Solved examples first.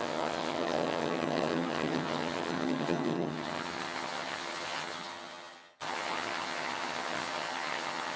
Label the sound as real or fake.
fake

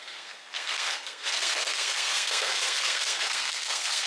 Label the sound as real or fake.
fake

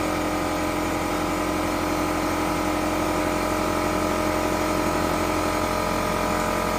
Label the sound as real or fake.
real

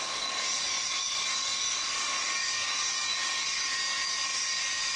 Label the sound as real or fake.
fake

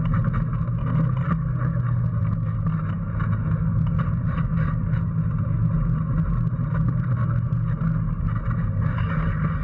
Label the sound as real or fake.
real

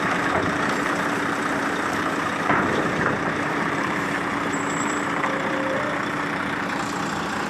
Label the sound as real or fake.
fake